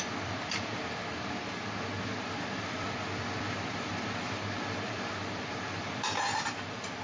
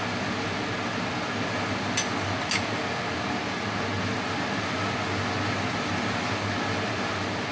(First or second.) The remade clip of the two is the first